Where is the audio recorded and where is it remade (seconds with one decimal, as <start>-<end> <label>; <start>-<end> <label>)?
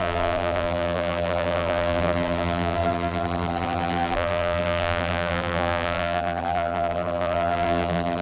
0.0-8.2 remade